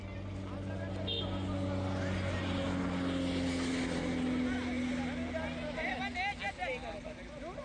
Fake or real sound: real